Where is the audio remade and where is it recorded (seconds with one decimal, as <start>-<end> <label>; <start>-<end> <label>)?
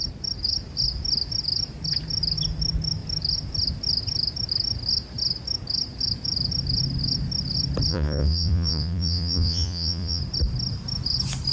0.0-7.9 recorded; 7.9-10.2 remade; 10.2-11.5 recorded